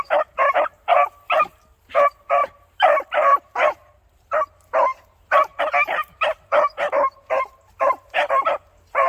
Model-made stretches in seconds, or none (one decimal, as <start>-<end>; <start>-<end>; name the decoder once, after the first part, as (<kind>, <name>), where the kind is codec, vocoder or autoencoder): 2.4-4.3 (vocoder, BigVGAN v2); 4.9-5.6; 6.0-9.1